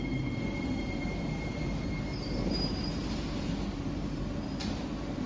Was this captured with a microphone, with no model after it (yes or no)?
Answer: no